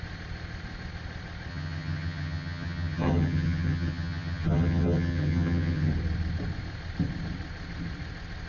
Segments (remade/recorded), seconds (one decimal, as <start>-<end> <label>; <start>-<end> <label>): 0.0-1.5 recorded; 1.5-5.9 remade; 5.9-8.5 recorded